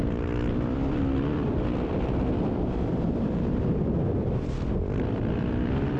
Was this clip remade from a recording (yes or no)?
yes